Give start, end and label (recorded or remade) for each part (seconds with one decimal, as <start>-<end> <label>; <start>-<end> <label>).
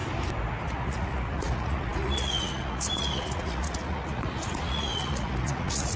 0.0-0.7 recorded; 0.7-6.0 remade